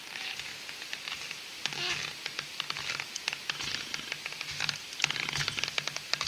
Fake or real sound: real